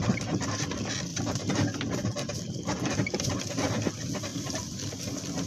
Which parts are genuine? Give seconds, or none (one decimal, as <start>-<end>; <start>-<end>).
0.0-1.1; 3.4-4.3; 5.0-5.5